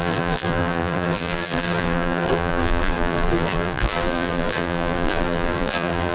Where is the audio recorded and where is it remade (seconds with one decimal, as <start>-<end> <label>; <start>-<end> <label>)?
0.0-6.1 remade